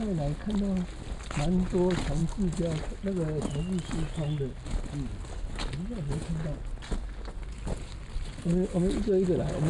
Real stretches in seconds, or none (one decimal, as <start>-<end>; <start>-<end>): 0.0-9.7